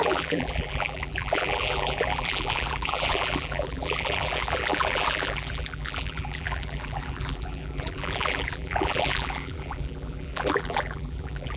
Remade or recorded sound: remade